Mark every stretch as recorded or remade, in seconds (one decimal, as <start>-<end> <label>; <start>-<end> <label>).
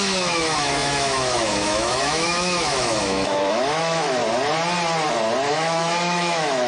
0.0-4.2 remade; 4.2-5.5 recorded; 5.5-6.7 remade